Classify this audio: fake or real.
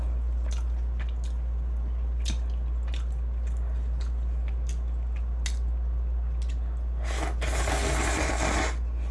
real